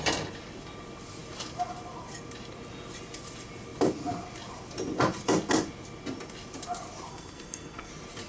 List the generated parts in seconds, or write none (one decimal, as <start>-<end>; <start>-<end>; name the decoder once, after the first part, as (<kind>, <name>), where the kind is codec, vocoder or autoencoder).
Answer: 7.1-7.9 (codec, SNAC)